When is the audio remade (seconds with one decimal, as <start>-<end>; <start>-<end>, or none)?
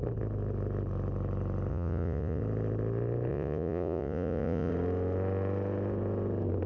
1.7-2.4; 3.3-4.7